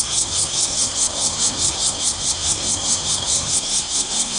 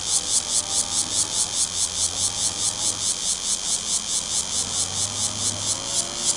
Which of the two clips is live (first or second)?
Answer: second